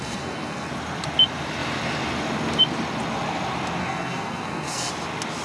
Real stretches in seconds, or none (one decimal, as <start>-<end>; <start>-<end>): 0.7-3.8; 4.9-5.4